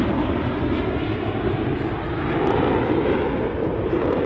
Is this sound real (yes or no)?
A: yes